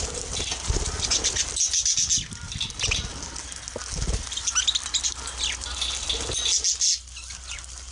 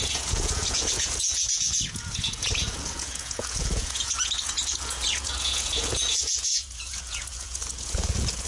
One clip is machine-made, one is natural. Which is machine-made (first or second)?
second